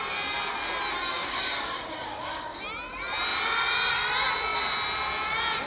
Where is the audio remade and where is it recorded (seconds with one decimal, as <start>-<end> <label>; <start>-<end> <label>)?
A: 0.0-1.1 recorded; 1.1-2.6 remade; 2.6-5.7 recorded

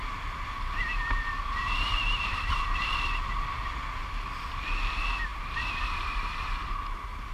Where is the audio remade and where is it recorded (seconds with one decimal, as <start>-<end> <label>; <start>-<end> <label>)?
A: 0.0-5.3 recorded; 5.3-6.6 remade; 6.6-7.3 recorded

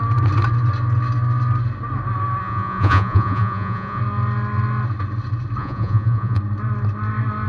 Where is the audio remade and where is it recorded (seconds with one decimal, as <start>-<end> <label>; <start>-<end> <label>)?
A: 0.0-2.4 recorded; 2.4-4.0 remade; 4.0-5.6 recorded; 5.6-6.4 remade; 6.4-7.5 recorded